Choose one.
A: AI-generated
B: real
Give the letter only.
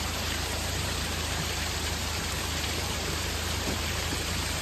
A